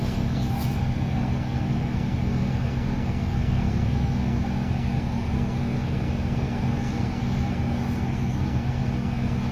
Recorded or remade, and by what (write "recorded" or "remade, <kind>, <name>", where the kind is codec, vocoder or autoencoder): remade, codec, SNAC